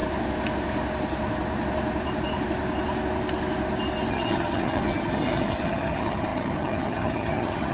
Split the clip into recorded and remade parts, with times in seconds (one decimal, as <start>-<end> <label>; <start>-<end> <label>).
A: 0.0-4.1 recorded; 4.1-7.7 remade